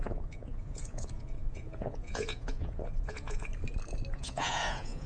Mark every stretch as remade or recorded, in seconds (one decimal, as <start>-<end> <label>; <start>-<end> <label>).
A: 0.0-3.5 remade; 3.5-4.1 recorded; 4.1-5.1 remade